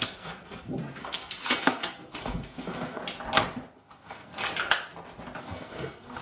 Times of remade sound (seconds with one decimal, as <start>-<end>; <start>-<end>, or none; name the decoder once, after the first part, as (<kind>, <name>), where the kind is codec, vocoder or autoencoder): 0.0-3.0 (codec, SNAC); 3.8-4.3; 5.4-6.2